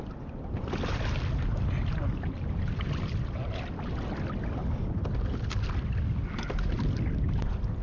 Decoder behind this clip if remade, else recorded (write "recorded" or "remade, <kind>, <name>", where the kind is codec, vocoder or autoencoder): recorded